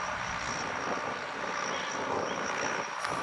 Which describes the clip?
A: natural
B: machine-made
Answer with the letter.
A